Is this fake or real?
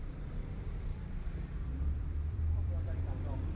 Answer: fake